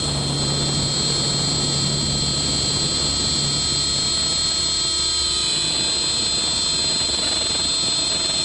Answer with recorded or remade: recorded